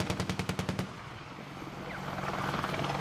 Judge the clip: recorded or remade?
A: recorded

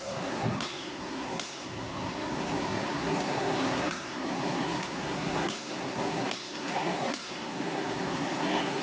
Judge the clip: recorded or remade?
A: remade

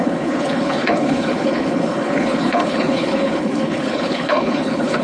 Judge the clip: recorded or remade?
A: remade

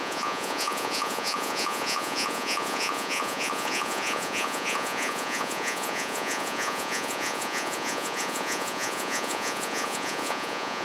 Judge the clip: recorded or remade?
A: remade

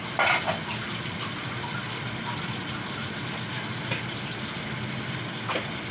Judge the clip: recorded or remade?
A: recorded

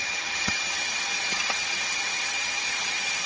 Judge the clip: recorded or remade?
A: remade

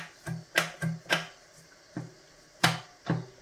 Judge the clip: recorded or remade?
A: recorded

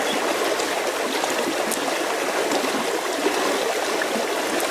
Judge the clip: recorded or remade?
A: recorded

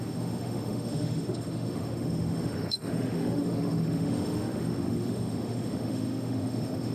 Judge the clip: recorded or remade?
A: remade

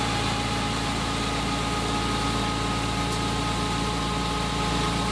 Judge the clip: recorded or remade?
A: recorded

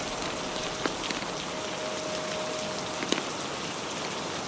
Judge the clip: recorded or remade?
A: recorded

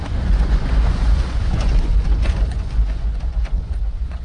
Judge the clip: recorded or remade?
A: remade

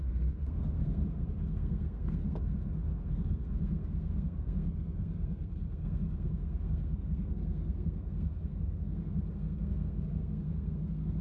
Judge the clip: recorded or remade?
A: remade